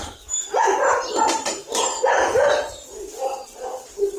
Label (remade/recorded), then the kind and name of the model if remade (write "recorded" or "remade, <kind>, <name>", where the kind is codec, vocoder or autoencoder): recorded